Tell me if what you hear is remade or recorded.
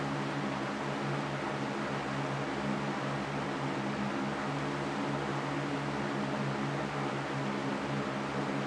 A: recorded